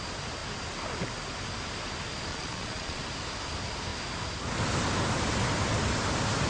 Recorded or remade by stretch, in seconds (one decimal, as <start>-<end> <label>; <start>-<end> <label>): 0.0-2.3 recorded; 2.3-3.0 remade; 3.0-6.5 recorded